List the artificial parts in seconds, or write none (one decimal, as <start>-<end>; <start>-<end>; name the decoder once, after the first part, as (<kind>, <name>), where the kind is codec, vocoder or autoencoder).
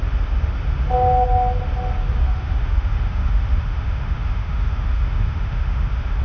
2.2-6.2 (autoencoder, DAC-VAE)